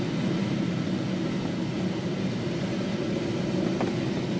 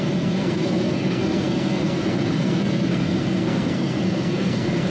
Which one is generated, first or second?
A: second